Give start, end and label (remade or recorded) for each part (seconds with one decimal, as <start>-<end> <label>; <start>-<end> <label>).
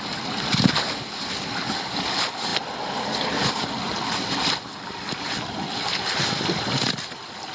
0.0-7.5 recorded